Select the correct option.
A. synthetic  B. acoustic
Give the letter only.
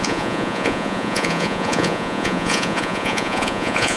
A